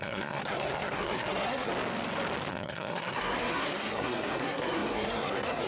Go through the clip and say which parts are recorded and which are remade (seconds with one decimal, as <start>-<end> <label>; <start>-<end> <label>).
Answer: 0.0-1.7 remade; 1.7-2.5 recorded; 2.5-5.7 remade